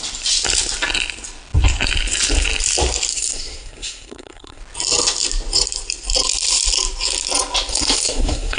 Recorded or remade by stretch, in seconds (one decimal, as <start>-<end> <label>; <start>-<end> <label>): 0.0-3.1 recorded; 3.1-4.6 remade; 4.6-7.7 recorded; 7.7-8.6 remade